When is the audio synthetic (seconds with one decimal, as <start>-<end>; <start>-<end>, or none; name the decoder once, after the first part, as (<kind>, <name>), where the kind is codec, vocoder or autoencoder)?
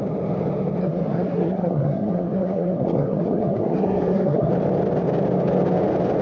0.8-4.5 (codec, SNAC)